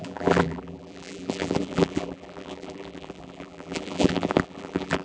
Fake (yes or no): yes